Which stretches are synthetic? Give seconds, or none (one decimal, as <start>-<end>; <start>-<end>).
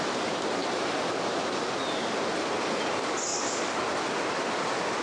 none